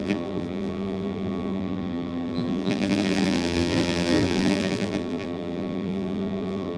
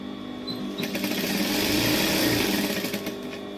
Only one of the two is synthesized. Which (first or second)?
first